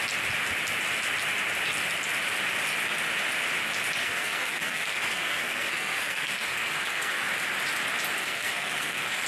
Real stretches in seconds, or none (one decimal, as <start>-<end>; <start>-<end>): 0.0-4.0; 7.3-8.2